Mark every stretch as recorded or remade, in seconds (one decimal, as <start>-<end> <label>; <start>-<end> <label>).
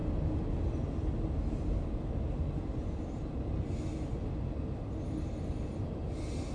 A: 0.0-6.5 recorded